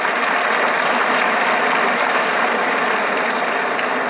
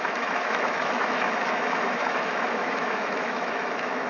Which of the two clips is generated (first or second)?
second